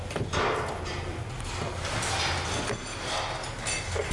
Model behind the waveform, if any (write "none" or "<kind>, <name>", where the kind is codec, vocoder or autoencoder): none